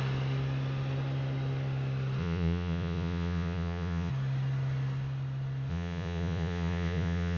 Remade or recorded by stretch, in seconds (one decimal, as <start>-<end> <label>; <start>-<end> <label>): 0.0-2.2 recorded; 2.2-4.1 remade; 4.1-5.7 recorded; 5.7-7.4 remade